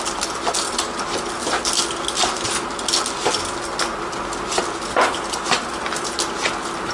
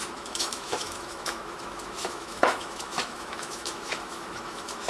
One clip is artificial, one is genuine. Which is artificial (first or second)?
second